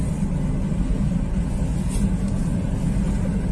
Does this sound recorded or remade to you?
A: recorded